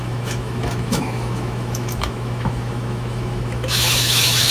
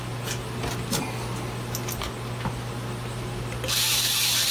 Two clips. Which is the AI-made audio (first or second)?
first